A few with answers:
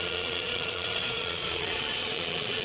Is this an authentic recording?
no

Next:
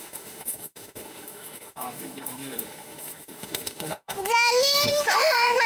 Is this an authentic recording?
no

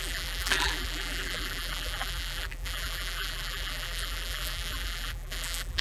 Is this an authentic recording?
no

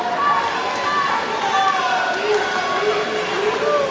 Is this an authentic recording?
yes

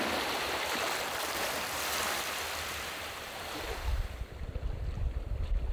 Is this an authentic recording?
no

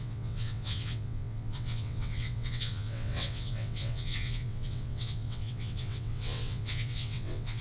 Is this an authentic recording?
no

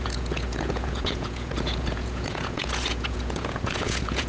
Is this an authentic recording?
no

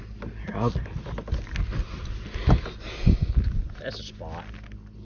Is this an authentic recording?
yes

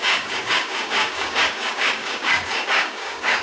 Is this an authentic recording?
no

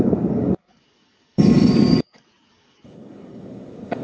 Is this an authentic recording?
no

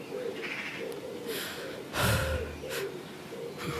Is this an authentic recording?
yes